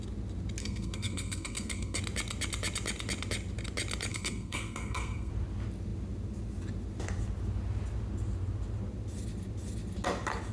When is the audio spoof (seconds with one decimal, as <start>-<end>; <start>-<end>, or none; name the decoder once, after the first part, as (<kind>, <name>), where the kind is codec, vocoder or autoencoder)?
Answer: 0.6-2.0 (codec, SNAC); 4.1-5.3